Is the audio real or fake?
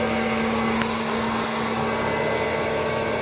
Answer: real